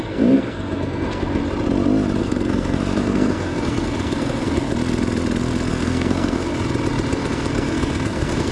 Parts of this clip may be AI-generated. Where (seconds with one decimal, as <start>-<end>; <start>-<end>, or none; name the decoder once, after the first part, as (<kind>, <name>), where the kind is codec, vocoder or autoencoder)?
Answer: 0.0-1.4 (codec, SNAC); 2.2-4.7; 5.7-6.5; 7.1-8.5